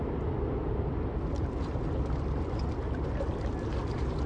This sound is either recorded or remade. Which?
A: recorded